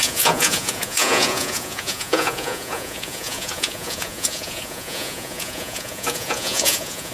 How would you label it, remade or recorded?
remade